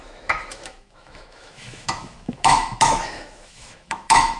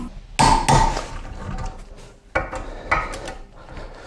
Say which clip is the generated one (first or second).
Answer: first